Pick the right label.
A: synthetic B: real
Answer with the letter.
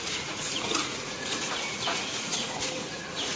A